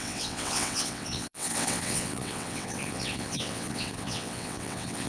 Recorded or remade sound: remade